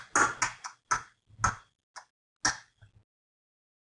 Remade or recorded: recorded